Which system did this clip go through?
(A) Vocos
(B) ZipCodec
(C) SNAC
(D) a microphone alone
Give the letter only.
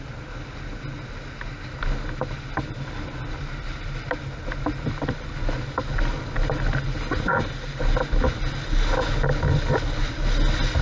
D